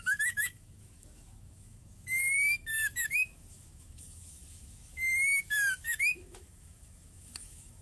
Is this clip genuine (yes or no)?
no